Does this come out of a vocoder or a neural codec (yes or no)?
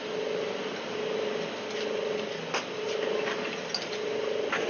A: no